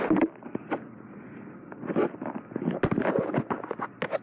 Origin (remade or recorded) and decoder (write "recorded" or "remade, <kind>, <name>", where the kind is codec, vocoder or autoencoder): recorded